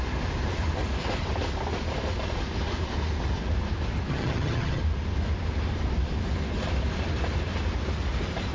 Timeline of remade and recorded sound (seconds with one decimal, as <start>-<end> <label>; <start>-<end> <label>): 0.0-4.1 recorded; 4.1-4.8 remade; 4.8-8.5 recorded